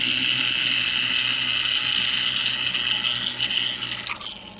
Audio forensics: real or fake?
real